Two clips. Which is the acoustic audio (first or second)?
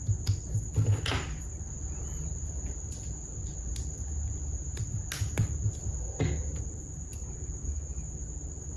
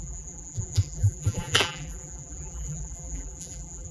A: first